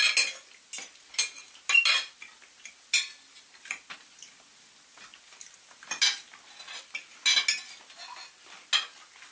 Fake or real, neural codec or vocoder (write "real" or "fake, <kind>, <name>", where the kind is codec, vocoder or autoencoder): real